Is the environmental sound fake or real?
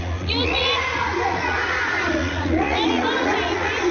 fake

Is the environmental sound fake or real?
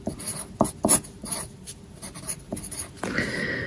real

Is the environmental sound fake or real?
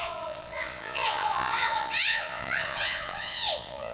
fake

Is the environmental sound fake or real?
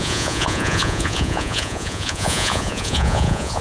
fake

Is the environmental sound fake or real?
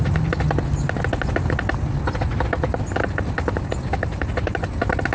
real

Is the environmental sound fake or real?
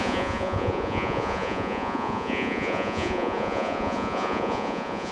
fake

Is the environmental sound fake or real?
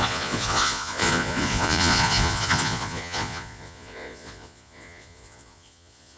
fake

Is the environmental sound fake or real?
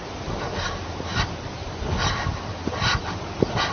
real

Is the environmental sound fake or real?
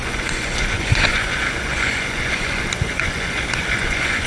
fake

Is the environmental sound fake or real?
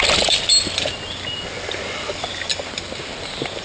real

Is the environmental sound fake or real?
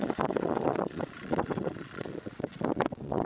fake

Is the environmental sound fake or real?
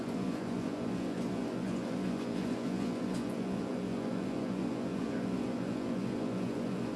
fake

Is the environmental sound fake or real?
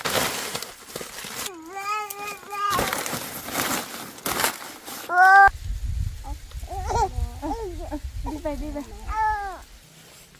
real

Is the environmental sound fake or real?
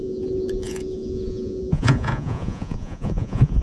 fake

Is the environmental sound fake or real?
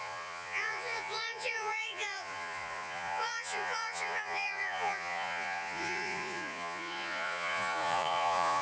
fake